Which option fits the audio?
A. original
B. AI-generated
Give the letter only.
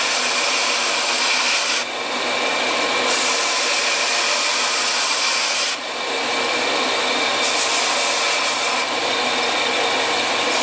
A